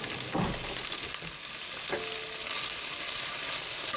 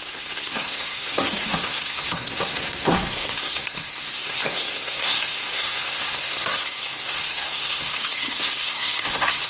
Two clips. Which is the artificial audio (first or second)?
second